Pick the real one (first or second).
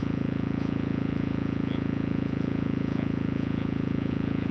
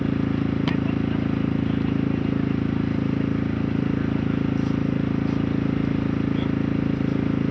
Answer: second